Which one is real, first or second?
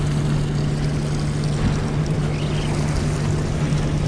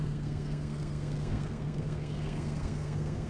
first